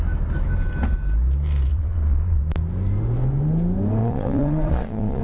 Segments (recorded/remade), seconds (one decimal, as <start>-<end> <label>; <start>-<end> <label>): 0.0-1.7 recorded; 1.7-2.4 remade; 2.4-4.0 recorded; 4.0-5.2 remade